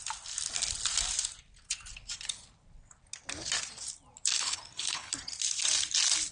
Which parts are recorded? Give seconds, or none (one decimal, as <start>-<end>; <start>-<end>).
0.0-4.3; 5.1-6.3